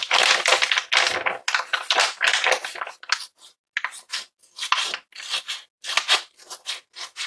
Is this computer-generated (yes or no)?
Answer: no